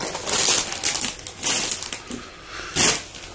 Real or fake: real